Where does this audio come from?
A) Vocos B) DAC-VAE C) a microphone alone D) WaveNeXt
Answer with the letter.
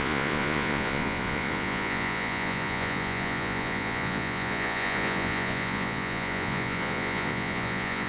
A